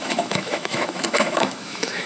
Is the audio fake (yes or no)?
yes